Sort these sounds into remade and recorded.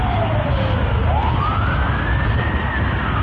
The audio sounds recorded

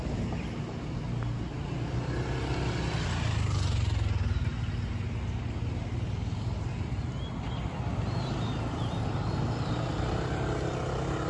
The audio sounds recorded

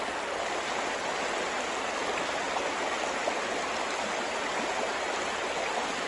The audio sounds recorded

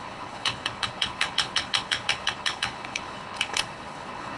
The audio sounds remade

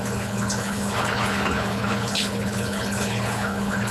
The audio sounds remade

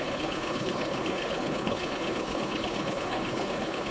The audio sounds remade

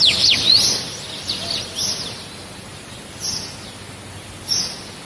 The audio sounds recorded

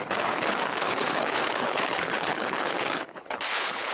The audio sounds remade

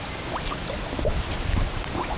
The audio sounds recorded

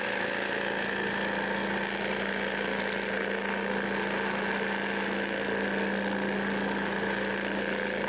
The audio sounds recorded